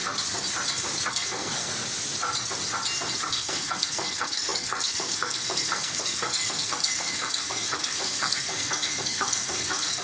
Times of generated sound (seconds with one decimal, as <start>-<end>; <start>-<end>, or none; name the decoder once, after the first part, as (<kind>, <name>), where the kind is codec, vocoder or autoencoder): 1.1-1.7 (codec, SNAC); 3.3-10.0